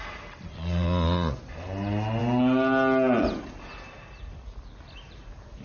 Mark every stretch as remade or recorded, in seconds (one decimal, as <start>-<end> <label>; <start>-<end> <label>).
0.0-0.5 recorded; 0.5-1.4 remade; 1.4-5.6 recorded

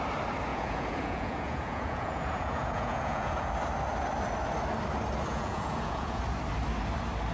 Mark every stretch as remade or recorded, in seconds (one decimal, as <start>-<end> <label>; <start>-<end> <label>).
0.0-0.5 recorded; 0.5-3.5 remade; 3.5-5.3 recorded; 5.3-6.2 remade; 6.2-7.3 recorded

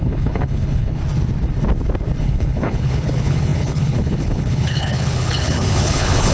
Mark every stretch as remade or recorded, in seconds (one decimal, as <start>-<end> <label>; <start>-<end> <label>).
0.0-1.0 remade; 1.0-2.2 recorded; 2.2-6.3 remade

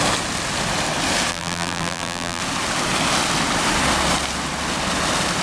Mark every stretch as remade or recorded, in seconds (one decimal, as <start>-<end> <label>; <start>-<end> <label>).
0.0-1.3 recorded; 1.3-2.4 remade; 2.4-5.4 recorded